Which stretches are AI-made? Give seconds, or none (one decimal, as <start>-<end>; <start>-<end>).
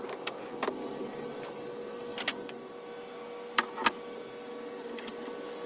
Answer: none